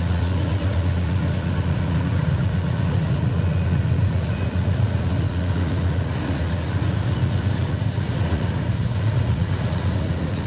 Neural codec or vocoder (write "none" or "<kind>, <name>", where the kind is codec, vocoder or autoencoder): vocoder, Vocos